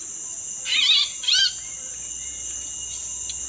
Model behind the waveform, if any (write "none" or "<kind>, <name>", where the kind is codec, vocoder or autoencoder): none